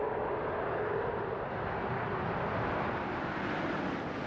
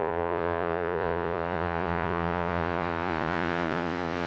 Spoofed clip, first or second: second